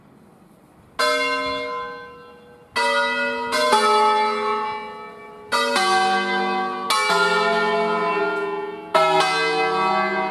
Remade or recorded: recorded